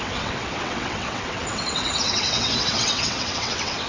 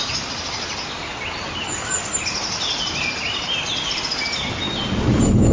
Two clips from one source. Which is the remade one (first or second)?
first